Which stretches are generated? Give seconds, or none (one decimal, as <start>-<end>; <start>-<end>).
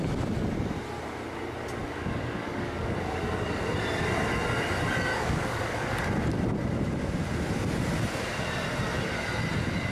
1.8-3.6; 5.1-5.9